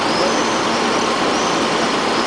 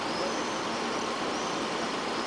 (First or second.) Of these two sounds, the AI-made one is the second